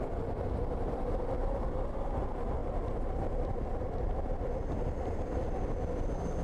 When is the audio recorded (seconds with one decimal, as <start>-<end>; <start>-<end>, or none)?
0.0-6.4